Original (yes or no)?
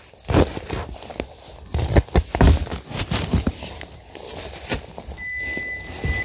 yes